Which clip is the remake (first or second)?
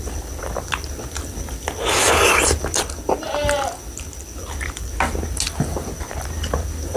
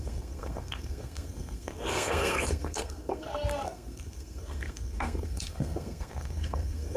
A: second